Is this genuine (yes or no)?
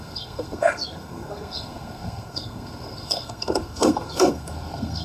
no